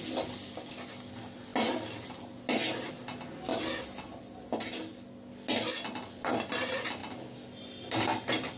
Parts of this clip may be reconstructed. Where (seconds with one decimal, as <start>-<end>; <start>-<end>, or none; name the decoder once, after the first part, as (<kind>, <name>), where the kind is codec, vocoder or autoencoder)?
none